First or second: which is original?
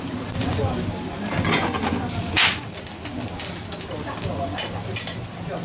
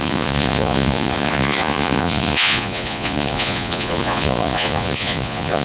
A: first